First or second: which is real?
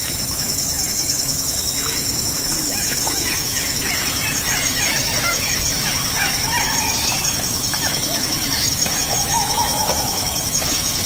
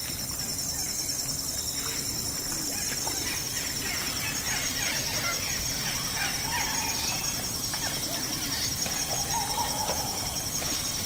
second